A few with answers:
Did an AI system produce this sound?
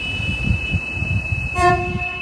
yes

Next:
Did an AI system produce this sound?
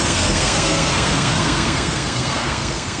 yes